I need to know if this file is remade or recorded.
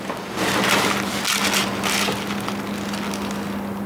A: recorded